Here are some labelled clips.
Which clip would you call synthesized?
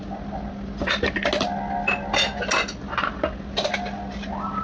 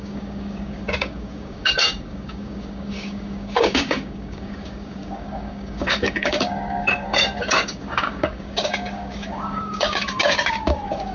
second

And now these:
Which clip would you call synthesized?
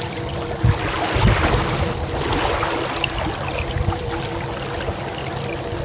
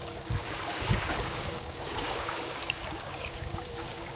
second